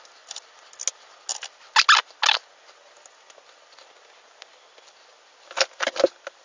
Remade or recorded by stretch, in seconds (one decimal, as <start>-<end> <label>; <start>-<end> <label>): 0.0-6.4 recorded